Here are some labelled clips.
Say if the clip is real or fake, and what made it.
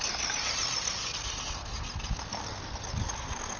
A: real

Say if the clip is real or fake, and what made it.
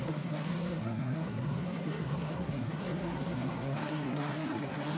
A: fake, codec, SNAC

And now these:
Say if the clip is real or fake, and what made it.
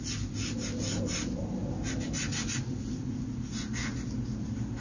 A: real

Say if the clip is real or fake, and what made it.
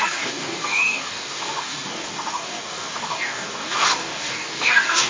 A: fake, codec, DAC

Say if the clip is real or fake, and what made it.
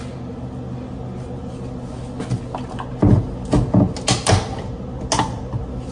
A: real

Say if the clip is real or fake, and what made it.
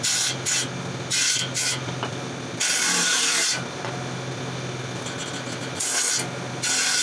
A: real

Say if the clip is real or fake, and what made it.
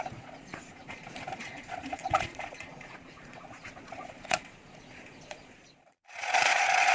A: fake, vocoder, Vocos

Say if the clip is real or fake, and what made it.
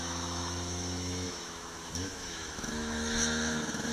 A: fake, autoencoder, DAC-VAE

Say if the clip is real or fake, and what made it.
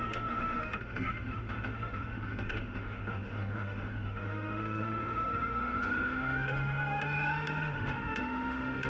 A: fake, autoencoder, DAC-VAE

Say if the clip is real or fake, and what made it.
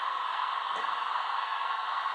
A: fake, codec, SNAC